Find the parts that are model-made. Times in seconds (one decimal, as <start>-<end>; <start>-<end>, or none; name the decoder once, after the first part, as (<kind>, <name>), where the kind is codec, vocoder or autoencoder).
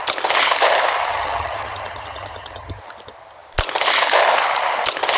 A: 1.1-2.8 (vocoder, HiFi-GAN)